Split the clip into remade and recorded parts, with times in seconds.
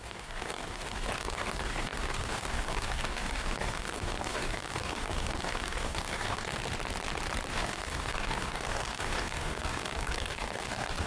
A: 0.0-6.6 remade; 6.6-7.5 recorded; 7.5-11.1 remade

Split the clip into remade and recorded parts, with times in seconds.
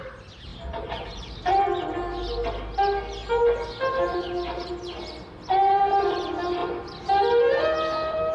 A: 0.0-0.5 recorded; 0.5-1.6 remade; 1.6-8.3 recorded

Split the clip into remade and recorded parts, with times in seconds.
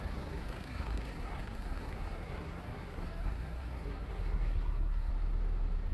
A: 0.0-5.1 remade; 5.1-5.9 recorded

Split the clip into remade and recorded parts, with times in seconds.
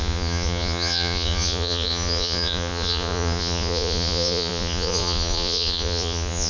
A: 0.0-6.5 remade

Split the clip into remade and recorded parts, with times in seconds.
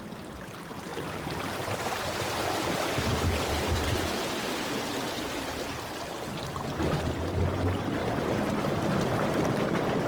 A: 0.0-0.9 recorded; 0.9-5.3 remade; 5.3-10.1 recorded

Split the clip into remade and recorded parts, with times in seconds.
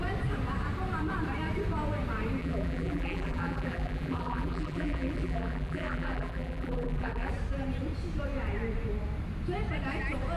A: 0.0-2.4 recorded; 2.4-7.3 remade; 7.3-10.4 recorded